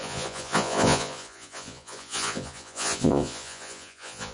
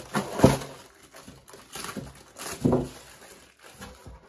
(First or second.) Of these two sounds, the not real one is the first